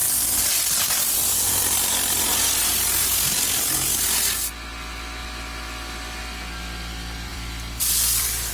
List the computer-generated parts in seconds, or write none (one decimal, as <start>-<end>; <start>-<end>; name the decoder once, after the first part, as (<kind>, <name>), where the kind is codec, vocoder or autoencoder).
0.0-0.5 (vocoder, BigVGAN v2); 1.2-2.6; 7.3-8.5